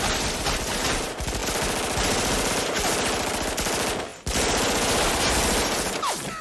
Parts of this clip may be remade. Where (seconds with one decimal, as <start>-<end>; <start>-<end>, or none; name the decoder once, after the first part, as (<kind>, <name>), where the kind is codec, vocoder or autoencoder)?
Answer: none

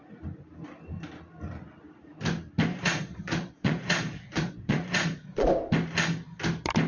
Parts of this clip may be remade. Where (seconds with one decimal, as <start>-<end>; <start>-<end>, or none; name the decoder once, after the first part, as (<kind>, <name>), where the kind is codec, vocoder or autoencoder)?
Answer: 2.7-5.5 (vocoder, Vocos)

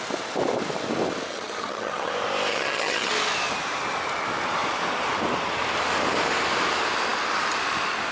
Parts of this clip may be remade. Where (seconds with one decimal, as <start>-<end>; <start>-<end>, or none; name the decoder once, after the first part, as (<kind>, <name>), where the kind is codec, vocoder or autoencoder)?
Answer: 1.3-2.1 (vocoder, HiFi-GAN); 2.5-3.1

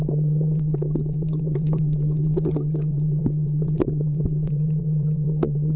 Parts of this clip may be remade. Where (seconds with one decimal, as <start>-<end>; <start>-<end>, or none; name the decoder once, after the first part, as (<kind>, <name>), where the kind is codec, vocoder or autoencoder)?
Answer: 0.0-5.8 (vocoder, WaveNeXt)

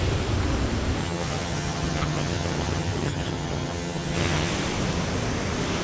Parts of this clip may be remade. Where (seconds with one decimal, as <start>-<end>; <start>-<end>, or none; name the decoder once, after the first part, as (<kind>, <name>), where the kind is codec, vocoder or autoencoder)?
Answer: 1.0-4.5 (vocoder, HiFi-GAN)

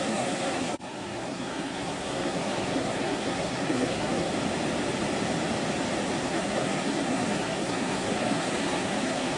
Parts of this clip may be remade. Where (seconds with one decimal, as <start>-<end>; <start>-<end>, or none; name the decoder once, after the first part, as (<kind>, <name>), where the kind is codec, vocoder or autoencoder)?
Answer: 0.0-4.3 (codec, SNAC); 6.2-9.4